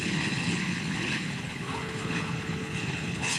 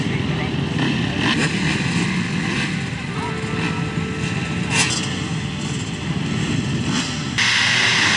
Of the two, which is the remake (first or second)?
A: first